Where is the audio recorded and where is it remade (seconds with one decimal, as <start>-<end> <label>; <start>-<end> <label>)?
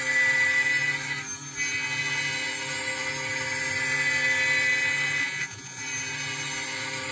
0.0-5.2 recorded; 5.2-5.8 remade; 5.8-7.1 recorded